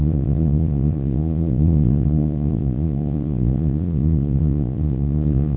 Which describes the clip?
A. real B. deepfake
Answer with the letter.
B